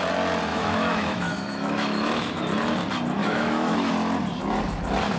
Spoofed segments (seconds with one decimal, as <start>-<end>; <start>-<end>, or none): 0.5-2.4; 3.2-3.9